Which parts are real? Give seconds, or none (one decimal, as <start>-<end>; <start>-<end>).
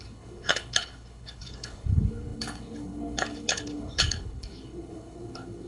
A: none